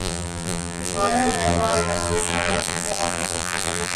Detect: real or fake fake